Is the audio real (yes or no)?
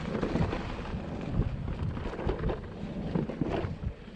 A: yes